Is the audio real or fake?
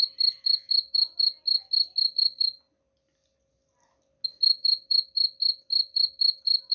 real